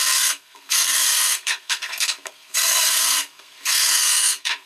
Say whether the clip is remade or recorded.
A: remade